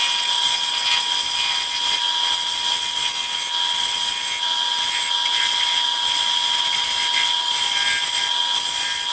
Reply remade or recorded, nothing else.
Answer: recorded